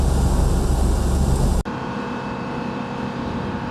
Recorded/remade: recorded